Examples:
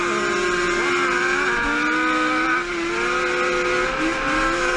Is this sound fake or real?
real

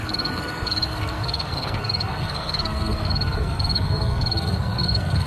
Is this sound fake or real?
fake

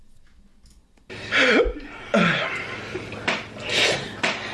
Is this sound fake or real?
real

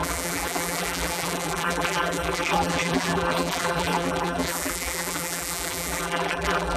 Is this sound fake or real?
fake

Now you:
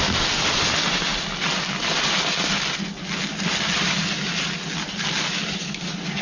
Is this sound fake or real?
real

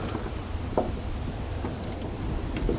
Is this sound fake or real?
real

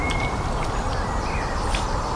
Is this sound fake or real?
real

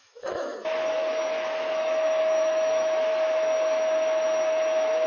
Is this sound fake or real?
fake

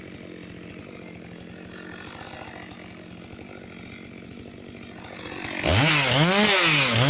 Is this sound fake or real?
real